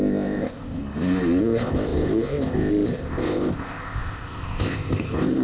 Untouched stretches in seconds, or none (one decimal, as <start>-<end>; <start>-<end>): 0.8-1.4